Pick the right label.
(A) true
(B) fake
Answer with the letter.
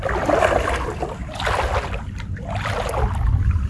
A